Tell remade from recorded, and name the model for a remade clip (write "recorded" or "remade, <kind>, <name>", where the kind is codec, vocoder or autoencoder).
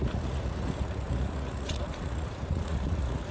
remade, vocoder, Vocos